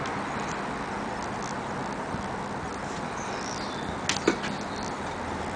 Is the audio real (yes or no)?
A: yes